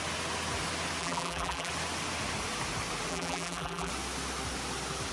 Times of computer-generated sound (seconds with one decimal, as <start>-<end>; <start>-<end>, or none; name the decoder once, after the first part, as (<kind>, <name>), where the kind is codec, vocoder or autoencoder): 1.0-1.7 (vocoder, BigVGAN v2); 3.1-3.9